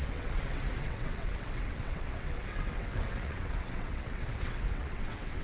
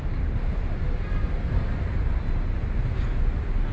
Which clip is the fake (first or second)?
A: first